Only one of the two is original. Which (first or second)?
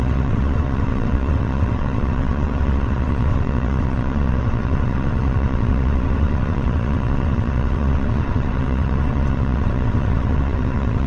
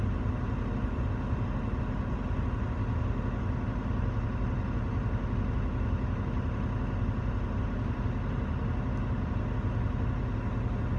second